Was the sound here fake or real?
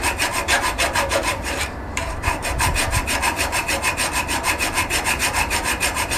fake